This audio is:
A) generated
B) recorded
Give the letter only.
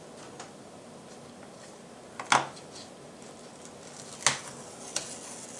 B